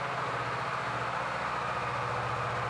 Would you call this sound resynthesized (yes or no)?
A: no